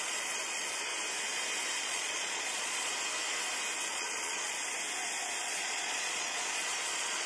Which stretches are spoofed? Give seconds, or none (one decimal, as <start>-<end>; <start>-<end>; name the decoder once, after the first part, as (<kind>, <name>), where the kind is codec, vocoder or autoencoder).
0.0-0.9 (vocoder, Vocos); 1.8-2.9; 3.8-4.6; 5.4-7.3